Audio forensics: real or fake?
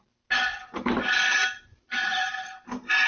real